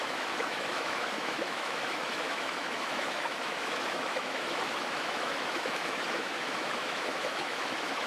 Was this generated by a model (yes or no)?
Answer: yes